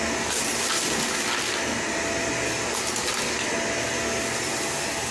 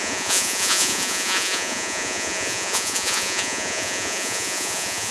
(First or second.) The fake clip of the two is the second